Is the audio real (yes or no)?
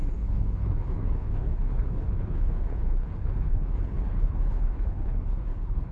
no